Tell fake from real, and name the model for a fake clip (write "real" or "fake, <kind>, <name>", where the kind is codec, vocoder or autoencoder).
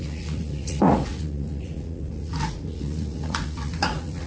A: fake, vocoder, Vocos